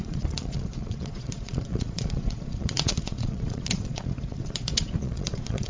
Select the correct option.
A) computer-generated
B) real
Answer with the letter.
A